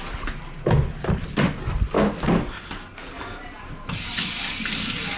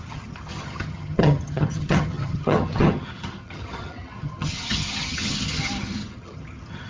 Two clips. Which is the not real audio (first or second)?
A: second